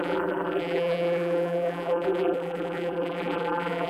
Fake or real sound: fake